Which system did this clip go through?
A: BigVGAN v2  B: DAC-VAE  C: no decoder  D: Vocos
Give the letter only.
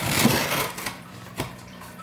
A